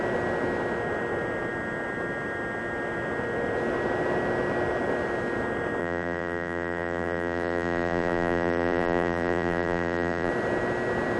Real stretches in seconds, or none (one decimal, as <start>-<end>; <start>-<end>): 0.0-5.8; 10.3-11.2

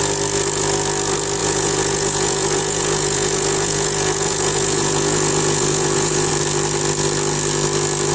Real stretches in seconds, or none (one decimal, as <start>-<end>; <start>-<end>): 0.0-1.4; 6.3-8.1

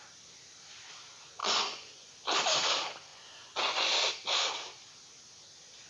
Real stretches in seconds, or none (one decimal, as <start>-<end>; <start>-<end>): 0.0-1.4; 2.1-3.1; 3.9-5.9

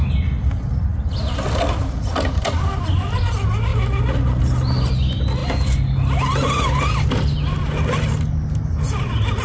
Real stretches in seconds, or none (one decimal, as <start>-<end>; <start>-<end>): 0.0-9.4

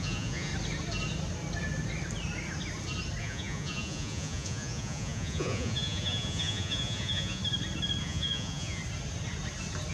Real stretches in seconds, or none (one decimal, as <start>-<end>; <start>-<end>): 0.5-3.2; 7.4-8.0; 8.8-9.9